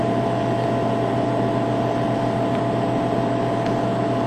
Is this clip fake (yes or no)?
no